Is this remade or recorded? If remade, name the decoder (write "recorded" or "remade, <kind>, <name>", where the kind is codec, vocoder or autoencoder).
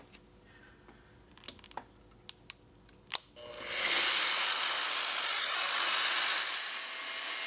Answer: recorded